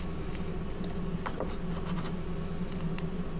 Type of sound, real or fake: real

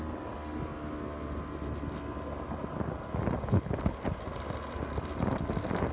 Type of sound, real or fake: real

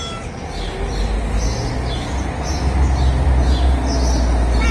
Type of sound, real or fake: real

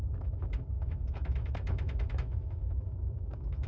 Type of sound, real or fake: fake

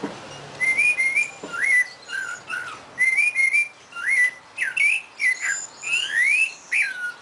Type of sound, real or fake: real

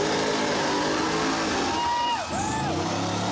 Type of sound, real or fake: real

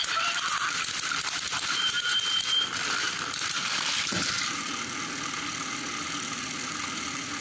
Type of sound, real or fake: fake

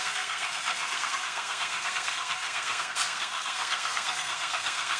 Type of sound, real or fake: fake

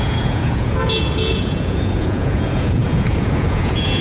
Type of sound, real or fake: fake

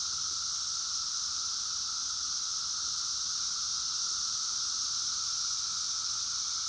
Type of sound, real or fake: real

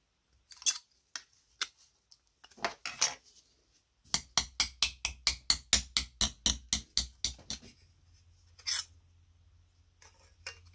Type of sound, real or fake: real